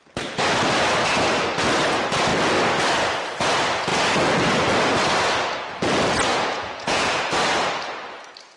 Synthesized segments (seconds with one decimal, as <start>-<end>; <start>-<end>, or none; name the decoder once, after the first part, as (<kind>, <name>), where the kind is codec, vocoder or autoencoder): 6.3-7.3 (vocoder, Vocos)